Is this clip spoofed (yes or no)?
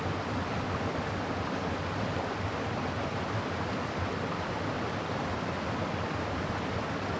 no